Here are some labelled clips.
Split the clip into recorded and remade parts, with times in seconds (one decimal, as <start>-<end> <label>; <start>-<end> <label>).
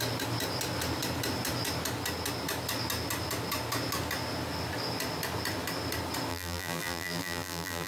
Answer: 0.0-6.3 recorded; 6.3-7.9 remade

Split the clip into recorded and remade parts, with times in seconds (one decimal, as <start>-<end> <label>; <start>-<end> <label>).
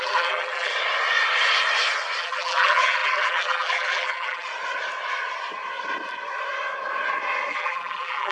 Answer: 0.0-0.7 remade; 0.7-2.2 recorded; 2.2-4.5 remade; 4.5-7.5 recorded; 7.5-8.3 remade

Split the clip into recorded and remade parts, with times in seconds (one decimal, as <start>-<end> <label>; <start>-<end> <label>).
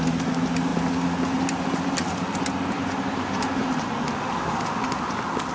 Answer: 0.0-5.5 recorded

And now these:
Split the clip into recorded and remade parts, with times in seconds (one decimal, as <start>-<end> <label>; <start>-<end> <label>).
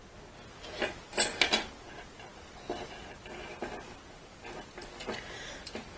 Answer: 0.0-6.0 recorded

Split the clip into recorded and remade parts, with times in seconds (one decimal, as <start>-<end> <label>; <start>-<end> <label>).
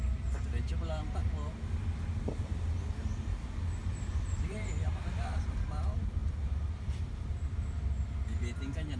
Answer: 0.0-3.8 recorded; 3.8-4.7 remade; 4.7-6.2 recorded; 6.2-7.3 remade; 7.3-9.0 recorded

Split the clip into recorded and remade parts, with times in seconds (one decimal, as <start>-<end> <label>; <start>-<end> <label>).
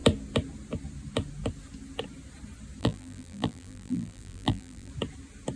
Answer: 0.0-2.8 recorded; 2.8-4.9 remade; 4.9-5.6 recorded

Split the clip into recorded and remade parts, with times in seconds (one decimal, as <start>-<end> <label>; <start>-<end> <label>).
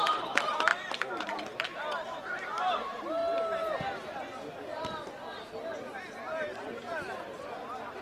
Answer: 0.0-3.2 remade; 3.2-8.0 recorded